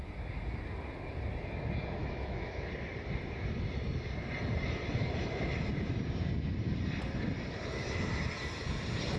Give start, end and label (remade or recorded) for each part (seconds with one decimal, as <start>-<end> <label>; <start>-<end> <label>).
0.0-2.0 recorded; 2.0-2.7 remade; 2.7-9.2 recorded